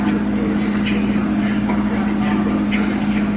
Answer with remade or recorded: recorded